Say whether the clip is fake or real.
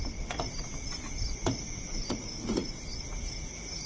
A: fake